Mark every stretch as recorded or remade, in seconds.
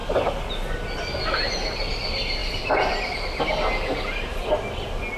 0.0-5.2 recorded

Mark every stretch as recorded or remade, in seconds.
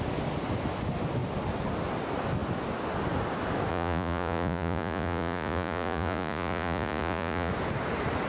0.0-3.7 recorded; 3.7-7.5 remade; 7.5-8.3 recorded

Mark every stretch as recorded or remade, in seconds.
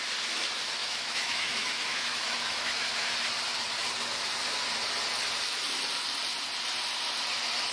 0.0-0.8 recorded; 0.8-3.1 remade; 3.1-7.7 recorded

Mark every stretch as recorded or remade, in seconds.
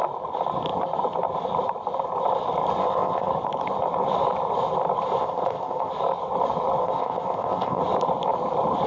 0.0-2.8 recorded; 2.8-3.3 remade; 3.3-5.2 recorded; 5.2-5.9 remade; 5.9-6.8 recorded; 6.8-7.8 remade; 7.8-8.9 recorded